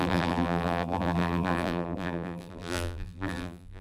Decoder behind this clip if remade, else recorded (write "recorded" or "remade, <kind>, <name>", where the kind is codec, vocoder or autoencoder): remade, vocoder, BigVGAN v2